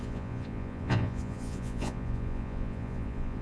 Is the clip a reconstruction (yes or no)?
yes